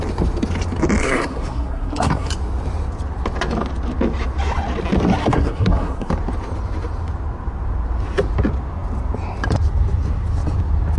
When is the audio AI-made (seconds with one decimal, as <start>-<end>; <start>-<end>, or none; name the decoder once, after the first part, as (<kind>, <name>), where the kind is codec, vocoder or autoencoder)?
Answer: 1.0-2.3 (codec, SNAC); 5.2-6.1